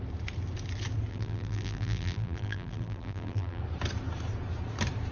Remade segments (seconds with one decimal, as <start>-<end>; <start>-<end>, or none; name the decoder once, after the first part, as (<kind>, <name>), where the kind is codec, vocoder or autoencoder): 1.1-3.6 (vocoder, BigVGAN v2)